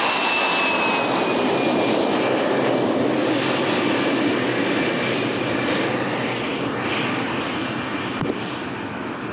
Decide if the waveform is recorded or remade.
recorded